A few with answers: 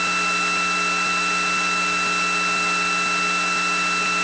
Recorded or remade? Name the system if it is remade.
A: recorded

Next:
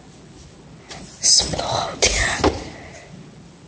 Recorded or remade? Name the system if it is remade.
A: recorded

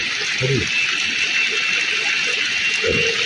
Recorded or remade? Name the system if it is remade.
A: recorded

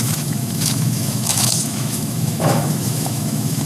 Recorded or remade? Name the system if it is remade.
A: remade, autoencoder, DAC-VAE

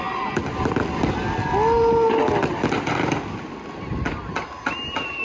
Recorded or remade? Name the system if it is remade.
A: recorded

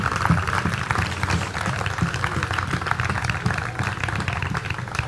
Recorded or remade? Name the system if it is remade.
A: recorded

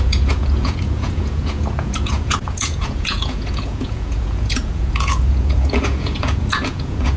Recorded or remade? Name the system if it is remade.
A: remade, vocoder, Vocos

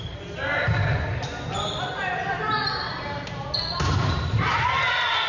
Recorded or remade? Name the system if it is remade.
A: recorded